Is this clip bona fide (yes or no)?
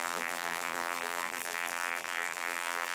no